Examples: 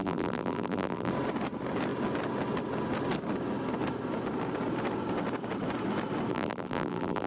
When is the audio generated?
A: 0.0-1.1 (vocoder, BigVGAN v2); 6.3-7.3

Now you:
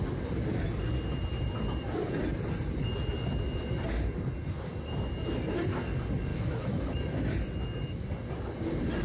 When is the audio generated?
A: 6.3-7.3 (autoencoder, DAC-VAE)